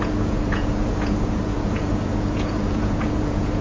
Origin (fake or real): fake